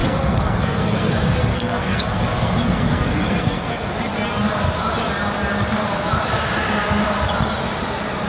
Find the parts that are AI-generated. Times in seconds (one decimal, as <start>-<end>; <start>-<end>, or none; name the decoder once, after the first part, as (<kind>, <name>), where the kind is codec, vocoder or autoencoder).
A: 0.0-1.1 (codec, SNAC); 1.5-3.9